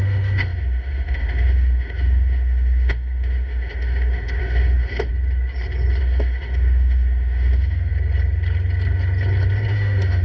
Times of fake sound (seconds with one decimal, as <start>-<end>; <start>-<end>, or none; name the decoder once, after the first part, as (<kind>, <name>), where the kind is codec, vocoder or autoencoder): 0.0-5.1 (autoencoder, DAC-VAE); 6.0-7.9; 9.7-10.2